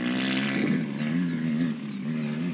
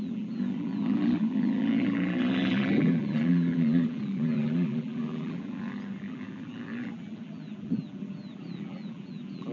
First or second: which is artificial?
second